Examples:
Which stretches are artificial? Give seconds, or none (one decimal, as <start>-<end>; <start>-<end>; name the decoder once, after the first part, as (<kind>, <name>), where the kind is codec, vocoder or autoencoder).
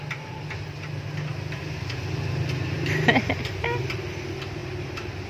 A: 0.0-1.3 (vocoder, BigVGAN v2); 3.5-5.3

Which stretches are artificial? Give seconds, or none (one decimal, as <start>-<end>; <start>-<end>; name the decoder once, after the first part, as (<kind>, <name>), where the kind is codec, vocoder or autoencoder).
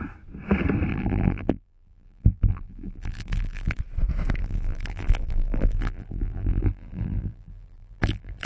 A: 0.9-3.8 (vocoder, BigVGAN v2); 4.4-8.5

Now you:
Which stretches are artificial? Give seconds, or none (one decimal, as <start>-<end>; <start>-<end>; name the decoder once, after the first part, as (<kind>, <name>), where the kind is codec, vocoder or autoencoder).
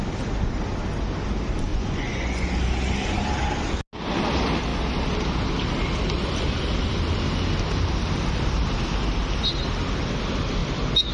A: 1.7-2.5 (vocoder, Vocos)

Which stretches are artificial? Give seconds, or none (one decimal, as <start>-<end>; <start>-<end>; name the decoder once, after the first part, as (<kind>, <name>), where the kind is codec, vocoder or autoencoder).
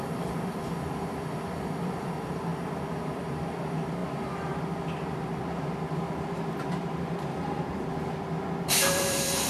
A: 0.0-2.5 (vocoder, BigVGAN v2); 3.0-9.5